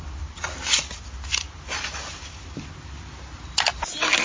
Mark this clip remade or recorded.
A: recorded